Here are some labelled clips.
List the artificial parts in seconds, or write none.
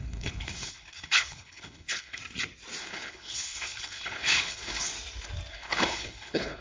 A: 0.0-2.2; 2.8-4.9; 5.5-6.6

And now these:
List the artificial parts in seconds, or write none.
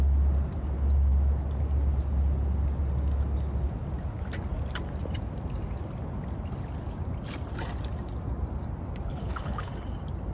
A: 9.1-9.7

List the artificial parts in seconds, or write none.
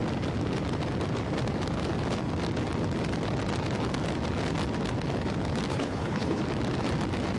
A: 5.7-6.4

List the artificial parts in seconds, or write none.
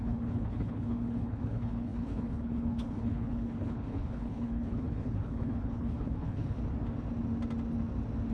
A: 0.0-6.6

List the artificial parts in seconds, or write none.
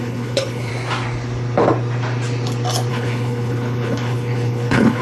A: 0.0-0.7; 2.9-5.0